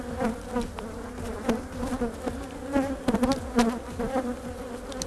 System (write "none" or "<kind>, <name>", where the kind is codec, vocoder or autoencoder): none